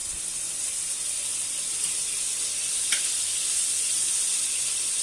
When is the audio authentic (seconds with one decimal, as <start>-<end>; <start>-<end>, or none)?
0.0-5.0